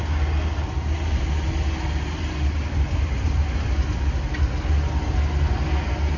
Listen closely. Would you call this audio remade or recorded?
recorded